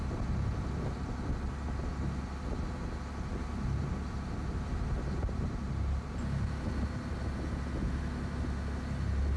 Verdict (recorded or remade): recorded